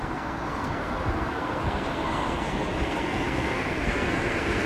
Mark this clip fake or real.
fake